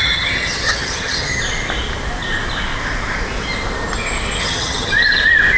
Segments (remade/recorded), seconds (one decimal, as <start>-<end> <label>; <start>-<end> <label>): 0.0-1.4 remade; 1.4-4.4 recorded; 4.4-4.9 remade; 4.9-5.6 recorded